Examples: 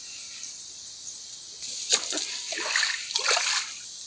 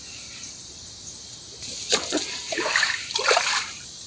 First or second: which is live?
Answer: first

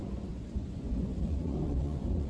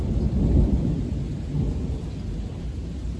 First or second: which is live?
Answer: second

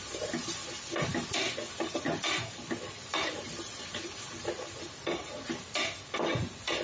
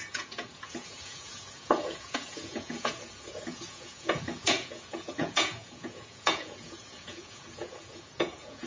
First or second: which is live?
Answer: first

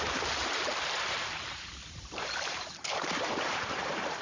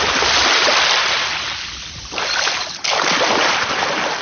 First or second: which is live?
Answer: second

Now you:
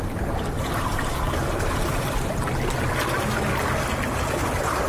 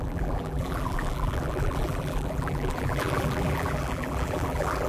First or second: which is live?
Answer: first